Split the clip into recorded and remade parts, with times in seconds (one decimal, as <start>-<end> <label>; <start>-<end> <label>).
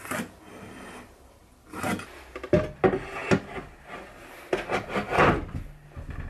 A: 0.0-6.3 recorded